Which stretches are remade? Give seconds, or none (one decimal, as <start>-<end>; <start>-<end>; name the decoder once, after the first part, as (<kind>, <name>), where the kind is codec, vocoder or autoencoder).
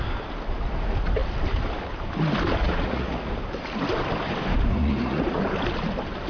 2.6-3.3 (vocoder, Vocos); 4.7-5.4